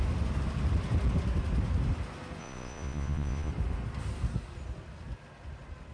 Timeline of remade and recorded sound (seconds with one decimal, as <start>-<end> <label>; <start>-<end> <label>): 0.0-2.4 recorded; 2.4-3.5 remade; 3.5-5.9 recorded